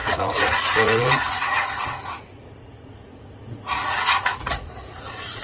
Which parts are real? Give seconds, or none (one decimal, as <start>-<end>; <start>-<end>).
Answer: 3.2-3.8